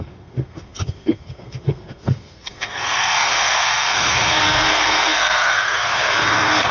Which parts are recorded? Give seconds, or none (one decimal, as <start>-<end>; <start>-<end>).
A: none